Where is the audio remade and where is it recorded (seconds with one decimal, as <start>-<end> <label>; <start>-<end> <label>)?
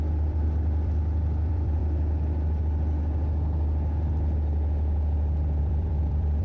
0.0-1.8 remade; 1.8-5.6 recorded; 5.6-6.4 remade